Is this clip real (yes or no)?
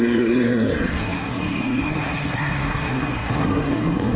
no